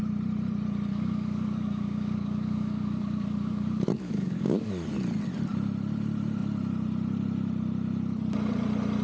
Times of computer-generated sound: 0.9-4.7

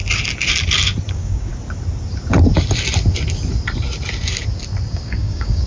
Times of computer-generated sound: 1.1-1.5; 4.9-5.7

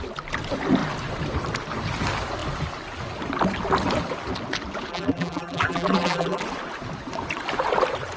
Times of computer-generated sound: 4.9-6.4

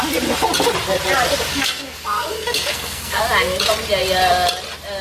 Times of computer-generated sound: 1.5-3.2

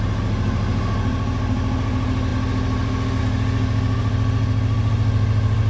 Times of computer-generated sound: none

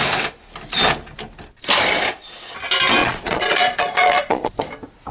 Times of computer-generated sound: 3.0-4.6

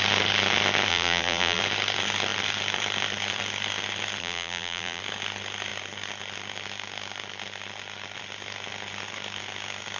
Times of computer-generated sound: 0.9-1.6; 4.2-5.0